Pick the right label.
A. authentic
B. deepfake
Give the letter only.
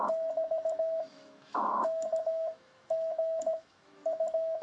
B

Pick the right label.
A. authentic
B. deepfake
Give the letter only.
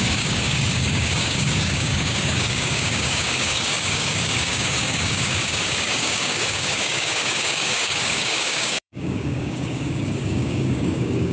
B